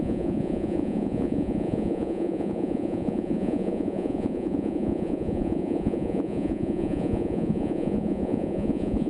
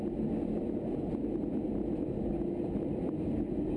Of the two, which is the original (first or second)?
second